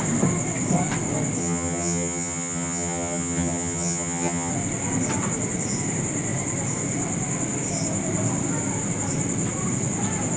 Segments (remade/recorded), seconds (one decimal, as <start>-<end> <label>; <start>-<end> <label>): 0.0-1.4 recorded; 1.4-4.5 remade; 4.5-10.4 recorded